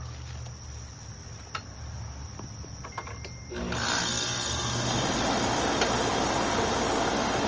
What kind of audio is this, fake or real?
real